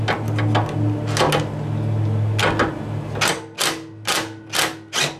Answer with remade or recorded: recorded